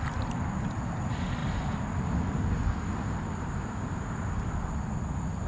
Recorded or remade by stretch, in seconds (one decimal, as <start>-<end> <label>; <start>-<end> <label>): 0.0-5.5 recorded